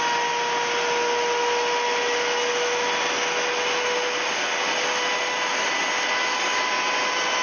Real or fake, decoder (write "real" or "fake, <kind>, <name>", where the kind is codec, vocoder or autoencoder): real